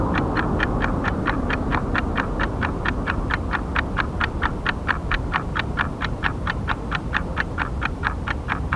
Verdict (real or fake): fake